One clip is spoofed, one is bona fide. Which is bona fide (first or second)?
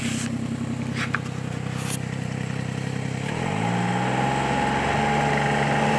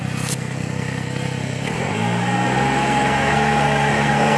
first